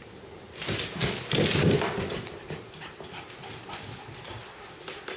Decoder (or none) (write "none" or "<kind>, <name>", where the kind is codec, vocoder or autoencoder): none